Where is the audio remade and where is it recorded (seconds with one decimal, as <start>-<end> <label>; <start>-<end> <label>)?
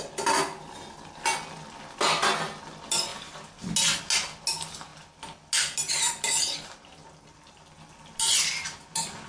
0.0-9.3 recorded